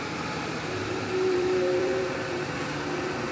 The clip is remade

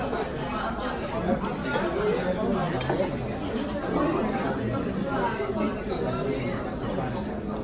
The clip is recorded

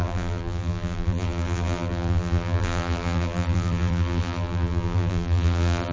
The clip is remade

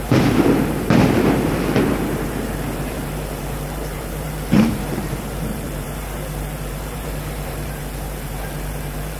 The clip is remade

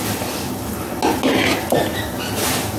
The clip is recorded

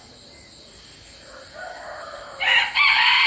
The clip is recorded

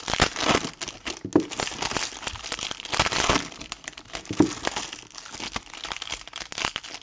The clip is recorded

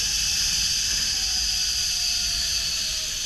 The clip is recorded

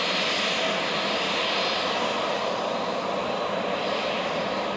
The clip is remade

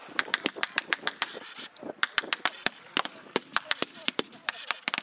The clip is remade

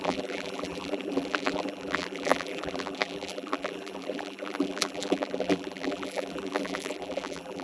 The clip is remade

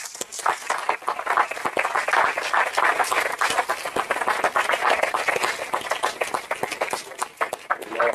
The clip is recorded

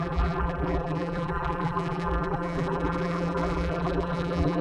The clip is remade